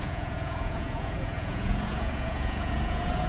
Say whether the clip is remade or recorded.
remade